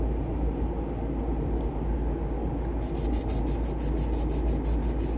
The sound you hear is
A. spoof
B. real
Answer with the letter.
B